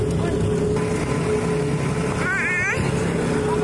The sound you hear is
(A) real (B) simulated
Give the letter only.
A